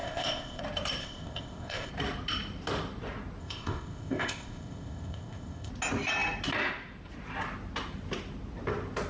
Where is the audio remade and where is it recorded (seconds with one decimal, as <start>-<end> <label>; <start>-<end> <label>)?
0.0-0.6 remade; 0.6-1.0 recorded; 1.0-1.9 remade; 1.9-3.4 recorded; 3.4-5.7 remade; 5.7-9.1 recorded